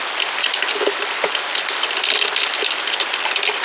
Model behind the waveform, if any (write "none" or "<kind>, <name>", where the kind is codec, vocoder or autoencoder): none